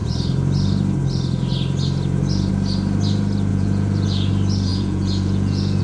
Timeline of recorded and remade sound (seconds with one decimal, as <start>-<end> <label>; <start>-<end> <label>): 0.0-3.5 recorded; 3.5-4.3 remade; 4.3-4.7 recorded; 4.7-5.8 remade